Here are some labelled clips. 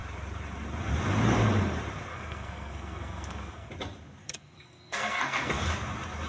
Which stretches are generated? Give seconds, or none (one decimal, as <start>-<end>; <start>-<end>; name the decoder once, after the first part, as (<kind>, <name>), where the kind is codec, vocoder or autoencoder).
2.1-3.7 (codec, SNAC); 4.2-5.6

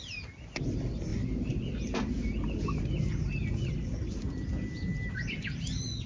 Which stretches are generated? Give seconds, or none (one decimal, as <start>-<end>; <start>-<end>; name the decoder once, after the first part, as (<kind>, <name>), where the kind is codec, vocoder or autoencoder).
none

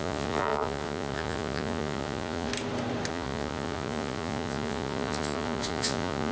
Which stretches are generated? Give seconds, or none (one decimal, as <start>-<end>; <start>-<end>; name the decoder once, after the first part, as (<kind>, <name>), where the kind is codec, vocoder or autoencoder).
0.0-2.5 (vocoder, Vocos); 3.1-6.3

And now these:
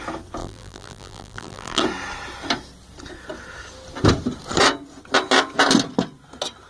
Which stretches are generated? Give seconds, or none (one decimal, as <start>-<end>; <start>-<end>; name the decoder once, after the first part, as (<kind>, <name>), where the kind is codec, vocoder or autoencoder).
0.4-1.8 (vocoder, BigVGAN v2)

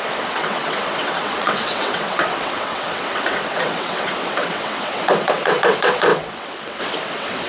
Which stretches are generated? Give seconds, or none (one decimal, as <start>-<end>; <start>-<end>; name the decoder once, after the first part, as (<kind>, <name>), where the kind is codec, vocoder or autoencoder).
0.0-7.5 (vocoder, WaveNeXt)